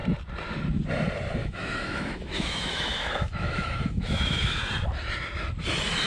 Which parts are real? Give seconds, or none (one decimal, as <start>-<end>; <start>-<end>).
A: 0.0-1.4; 4.6-6.1